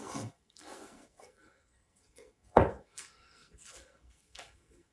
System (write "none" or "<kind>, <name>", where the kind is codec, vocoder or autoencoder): codec, SNAC